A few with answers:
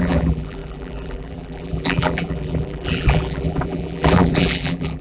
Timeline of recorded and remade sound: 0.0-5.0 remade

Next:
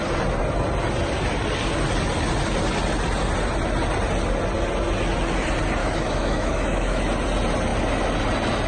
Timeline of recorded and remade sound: 0.0-5.8 recorded; 5.8-7.0 remade; 7.0-8.7 recorded

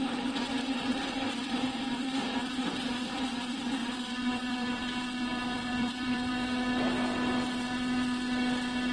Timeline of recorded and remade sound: 0.0-0.9 recorded; 0.9-2.8 remade; 2.8-3.8 recorded; 3.8-4.8 remade; 4.8-5.4 recorded; 5.4-6.3 remade; 6.3-8.9 recorded